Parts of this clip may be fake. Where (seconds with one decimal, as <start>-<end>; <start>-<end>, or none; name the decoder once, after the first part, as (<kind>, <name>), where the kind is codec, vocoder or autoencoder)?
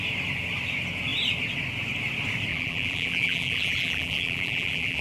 2.5-5.0 (vocoder, BigVGAN v2)